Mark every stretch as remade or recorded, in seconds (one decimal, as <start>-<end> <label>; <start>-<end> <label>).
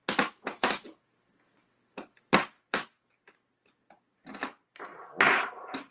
0.0-5.9 recorded